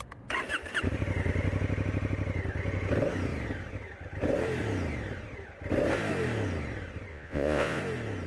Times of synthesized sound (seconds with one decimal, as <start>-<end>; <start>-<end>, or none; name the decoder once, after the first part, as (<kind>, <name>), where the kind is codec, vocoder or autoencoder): 7.1-7.8 (vocoder, Vocos)